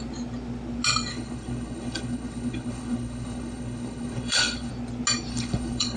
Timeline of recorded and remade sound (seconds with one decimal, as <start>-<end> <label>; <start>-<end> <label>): 0.0-1.1 recorded; 1.1-4.7 remade; 4.7-5.3 recorded; 5.3-6.0 remade